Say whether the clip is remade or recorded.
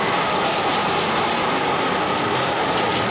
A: recorded